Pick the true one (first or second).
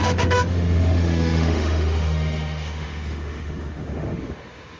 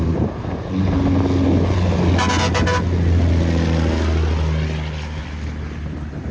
second